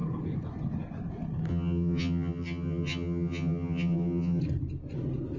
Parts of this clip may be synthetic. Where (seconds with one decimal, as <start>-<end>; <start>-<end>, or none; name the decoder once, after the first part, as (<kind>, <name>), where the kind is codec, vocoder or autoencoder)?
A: 1.5-4.4 (vocoder, HiFi-GAN)